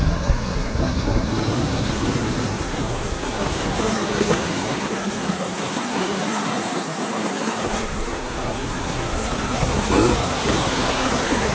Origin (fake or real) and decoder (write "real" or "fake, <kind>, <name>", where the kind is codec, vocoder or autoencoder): fake, codec, SNAC